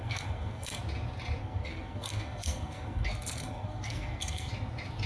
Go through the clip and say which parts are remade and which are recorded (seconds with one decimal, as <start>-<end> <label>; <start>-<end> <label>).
0.0-0.8 remade; 0.8-1.4 recorded; 1.4-4.5 remade; 4.5-5.1 recorded